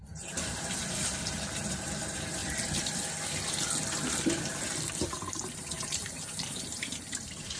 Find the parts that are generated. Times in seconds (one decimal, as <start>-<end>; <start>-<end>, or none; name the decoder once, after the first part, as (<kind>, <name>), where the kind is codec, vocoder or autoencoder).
0.0-2.4 (vocoder, BigVGAN v2); 4.9-7.6